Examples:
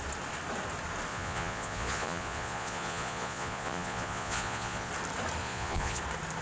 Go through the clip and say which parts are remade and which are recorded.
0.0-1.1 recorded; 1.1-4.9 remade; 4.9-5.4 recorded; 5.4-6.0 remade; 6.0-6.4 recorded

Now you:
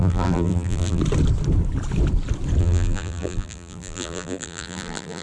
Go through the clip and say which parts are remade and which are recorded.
0.0-1.0 remade; 1.0-2.6 recorded; 2.6-5.2 remade